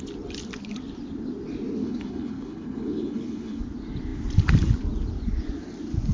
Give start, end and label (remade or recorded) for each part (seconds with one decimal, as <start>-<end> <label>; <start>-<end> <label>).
0.0-1.8 recorded; 1.8-3.6 remade; 3.6-6.1 recorded